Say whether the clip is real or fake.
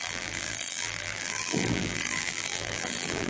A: fake